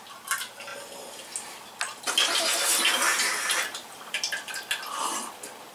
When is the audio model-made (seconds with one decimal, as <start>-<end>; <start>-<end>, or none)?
none